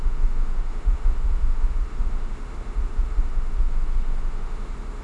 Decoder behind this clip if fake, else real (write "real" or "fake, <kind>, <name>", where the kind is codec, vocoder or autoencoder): fake, autoencoder, DAC-VAE